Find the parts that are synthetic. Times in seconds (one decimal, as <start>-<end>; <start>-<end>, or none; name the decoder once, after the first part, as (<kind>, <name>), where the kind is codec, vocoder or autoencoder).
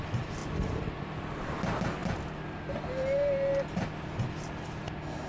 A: none